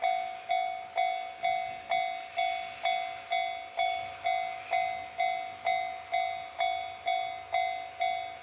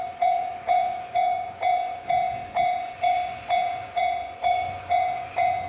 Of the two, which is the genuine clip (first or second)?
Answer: first